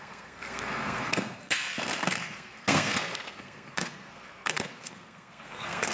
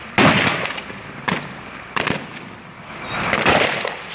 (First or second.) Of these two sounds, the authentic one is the second